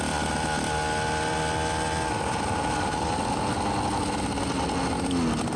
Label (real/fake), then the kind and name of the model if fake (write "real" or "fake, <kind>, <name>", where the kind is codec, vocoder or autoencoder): real